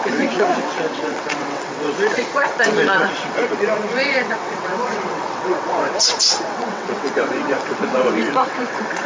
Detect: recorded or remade remade